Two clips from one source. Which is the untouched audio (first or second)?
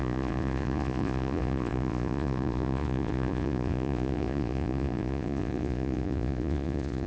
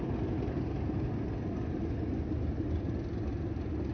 second